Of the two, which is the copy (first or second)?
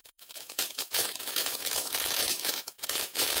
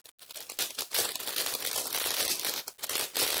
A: first